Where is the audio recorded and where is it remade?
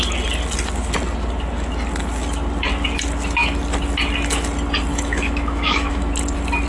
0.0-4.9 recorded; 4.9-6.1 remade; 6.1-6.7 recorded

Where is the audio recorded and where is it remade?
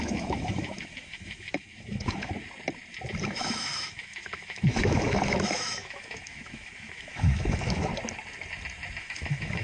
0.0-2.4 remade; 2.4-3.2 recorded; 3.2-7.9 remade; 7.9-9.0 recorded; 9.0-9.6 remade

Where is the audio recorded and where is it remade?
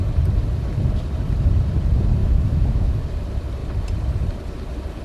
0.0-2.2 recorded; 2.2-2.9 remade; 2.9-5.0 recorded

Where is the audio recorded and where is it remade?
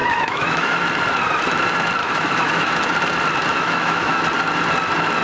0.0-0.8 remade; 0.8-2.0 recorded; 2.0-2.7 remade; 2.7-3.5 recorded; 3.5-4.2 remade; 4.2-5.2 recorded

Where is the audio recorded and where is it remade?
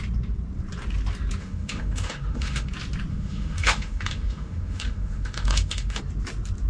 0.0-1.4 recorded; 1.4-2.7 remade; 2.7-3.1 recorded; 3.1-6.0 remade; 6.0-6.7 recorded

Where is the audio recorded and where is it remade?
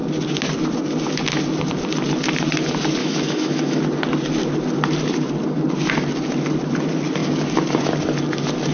0.0-3.0 recorded; 3.0-3.8 remade; 3.8-8.7 recorded